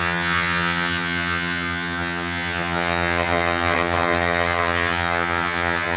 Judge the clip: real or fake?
fake